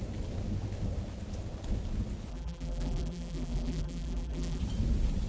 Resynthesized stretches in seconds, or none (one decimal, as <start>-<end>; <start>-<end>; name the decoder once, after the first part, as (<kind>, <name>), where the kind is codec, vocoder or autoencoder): 2.3-4.6 (vocoder, BigVGAN v2)